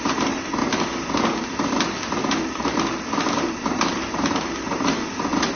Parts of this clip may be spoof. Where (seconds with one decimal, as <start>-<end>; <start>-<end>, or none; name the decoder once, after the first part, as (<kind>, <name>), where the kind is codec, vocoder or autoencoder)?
none